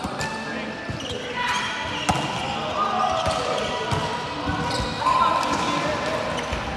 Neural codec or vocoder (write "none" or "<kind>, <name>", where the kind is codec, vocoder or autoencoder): none